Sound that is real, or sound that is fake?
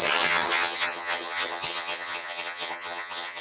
fake